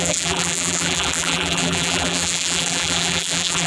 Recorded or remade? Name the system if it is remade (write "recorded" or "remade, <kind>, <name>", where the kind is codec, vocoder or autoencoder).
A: remade, vocoder, BigVGAN v2